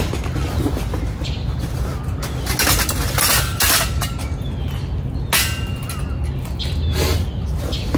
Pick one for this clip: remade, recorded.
recorded